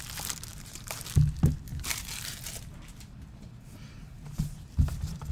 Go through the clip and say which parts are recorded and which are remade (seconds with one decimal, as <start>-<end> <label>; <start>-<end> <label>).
0.0-0.5 recorded; 0.5-1.0 remade; 1.0-1.7 recorded; 1.7-5.3 remade